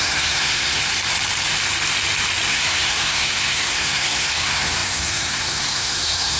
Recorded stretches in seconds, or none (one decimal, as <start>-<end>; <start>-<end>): 0.8-2.5